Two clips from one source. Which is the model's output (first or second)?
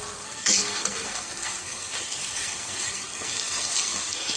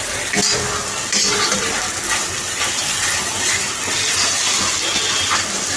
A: first